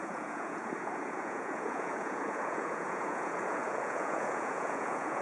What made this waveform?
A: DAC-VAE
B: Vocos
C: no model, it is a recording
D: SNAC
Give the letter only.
B